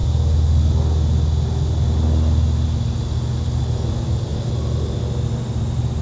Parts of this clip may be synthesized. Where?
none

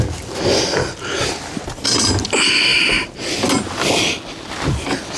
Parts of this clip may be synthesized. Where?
none

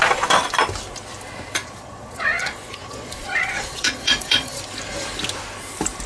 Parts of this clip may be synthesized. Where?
1.6-4.6 (vocoder, Vocos)

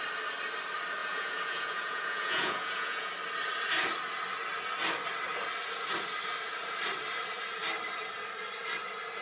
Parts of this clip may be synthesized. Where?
1.0-3.1 (vocoder, Vocos)

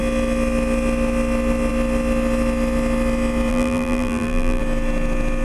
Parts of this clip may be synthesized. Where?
3.5-4.6 (vocoder, BigVGAN v2)

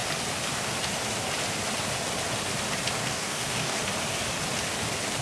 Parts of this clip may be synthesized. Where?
3.0-3.8 (codec, DAC)